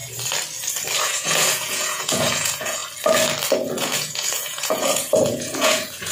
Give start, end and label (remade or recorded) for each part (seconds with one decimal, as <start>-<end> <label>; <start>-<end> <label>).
0.0-1.0 recorded; 1.0-2.8 remade; 2.8-3.8 recorded; 3.8-6.1 remade